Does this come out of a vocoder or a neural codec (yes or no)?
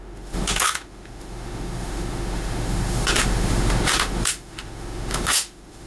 yes